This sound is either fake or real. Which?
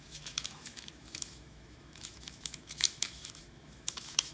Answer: fake